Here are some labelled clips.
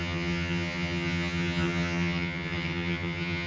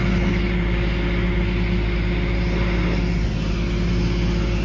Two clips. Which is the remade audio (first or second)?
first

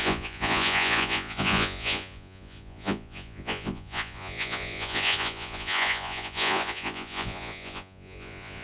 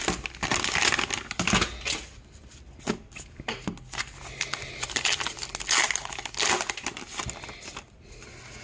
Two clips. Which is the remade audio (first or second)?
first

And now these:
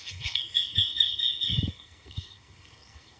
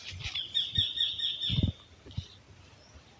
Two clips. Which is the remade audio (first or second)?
first